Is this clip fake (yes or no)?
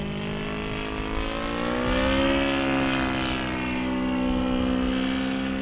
no